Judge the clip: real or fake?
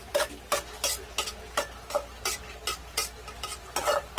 real